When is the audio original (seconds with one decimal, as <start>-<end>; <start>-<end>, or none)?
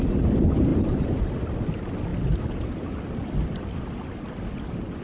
0.0-0.7; 1.2-5.0